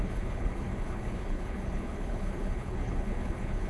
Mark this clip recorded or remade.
remade